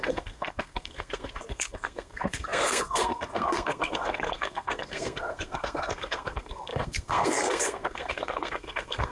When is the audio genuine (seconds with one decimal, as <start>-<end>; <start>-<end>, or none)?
none